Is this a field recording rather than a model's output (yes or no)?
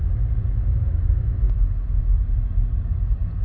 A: yes